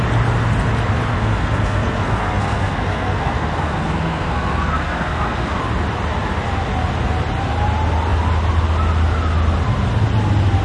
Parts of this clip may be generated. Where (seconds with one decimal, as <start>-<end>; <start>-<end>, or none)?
1.1-5.6